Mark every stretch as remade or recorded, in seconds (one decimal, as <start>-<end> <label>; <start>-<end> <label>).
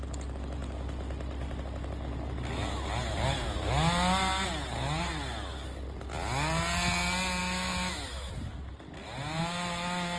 0.0-7.4 recorded; 7.4-8.3 remade; 8.3-10.2 recorded